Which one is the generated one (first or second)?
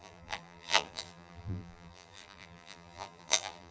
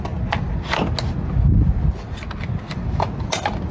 first